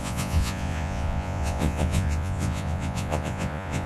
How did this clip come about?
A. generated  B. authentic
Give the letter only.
A